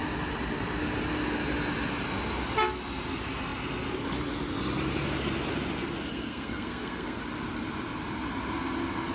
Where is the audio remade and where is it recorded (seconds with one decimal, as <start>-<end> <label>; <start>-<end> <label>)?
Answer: 0.0-6.1 recorded; 6.1-7.2 remade; 7.2-9.1 recorded